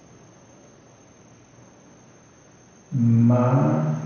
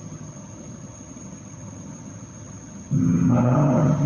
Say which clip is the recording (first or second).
first